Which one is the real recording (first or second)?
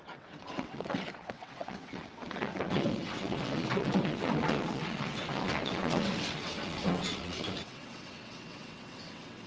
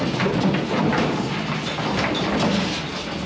second